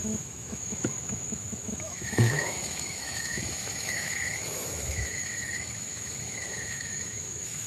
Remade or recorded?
remade